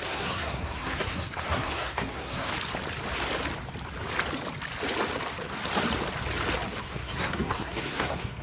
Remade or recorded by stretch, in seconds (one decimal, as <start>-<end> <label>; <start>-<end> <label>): 0.0-2.5 remade; 2.5-6.8 recorded; 6.8-8.4 remade